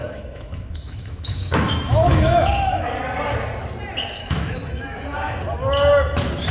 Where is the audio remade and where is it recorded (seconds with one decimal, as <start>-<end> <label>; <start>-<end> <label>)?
0.0-2.9 remade; 2.9-4.2 recorded; 4.2-5.4 remade; 5.4-6.5 recorded